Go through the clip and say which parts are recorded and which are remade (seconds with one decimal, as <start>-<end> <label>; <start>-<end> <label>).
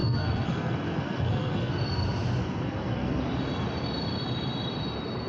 0.0-1.7 remade; 1.7-2.4 recorded; 2.4-3.2 remade; 3.2-5.3 recorded